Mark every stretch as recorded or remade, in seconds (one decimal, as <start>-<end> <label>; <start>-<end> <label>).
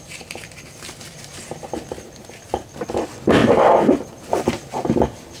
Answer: 0.0-5.4 recorded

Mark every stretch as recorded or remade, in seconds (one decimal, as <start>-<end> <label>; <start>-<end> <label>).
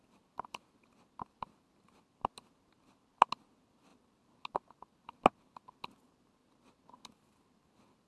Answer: 0.0-8.1 recorded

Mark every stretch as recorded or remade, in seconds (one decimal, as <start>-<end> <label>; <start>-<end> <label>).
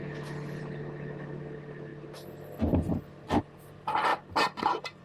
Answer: 0.0-5.0 recorded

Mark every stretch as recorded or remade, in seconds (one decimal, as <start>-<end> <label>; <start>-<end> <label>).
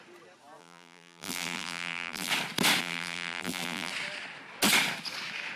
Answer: 0.0-0.6 recorded; 0.6-2.3 remade; 2.3-2.8 recorded; 2.8-3.9 remade; 3.9-5.6 recorded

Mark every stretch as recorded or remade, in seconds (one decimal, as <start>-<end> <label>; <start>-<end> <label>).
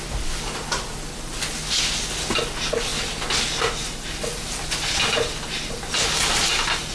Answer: 0.0-6.9 recorded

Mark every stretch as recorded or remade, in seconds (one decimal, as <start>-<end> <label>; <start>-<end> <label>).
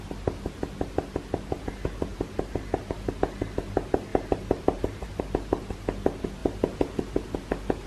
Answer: 0.0-2.1 recorded; 2.1-3.1 remade; 3.1-4.1 recorded; 4.1-5.2 remade; 5.2-7.9 recorded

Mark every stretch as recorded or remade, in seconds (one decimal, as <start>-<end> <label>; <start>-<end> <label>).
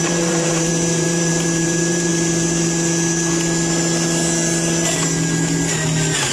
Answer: 0.0-2.1 remade; 2.1-6.3 recorded